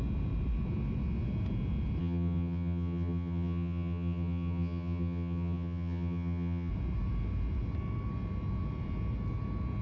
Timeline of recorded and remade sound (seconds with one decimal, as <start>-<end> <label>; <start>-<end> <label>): 0.0-2.0 recorded; 2.0-6.7 remade; 6.7-9.8 recorded